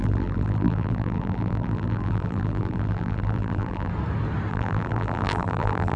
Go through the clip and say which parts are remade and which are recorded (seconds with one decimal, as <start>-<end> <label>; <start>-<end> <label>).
0.0-3.9 remade; 3.9-4.5 recorded; 4.5-6.0 remade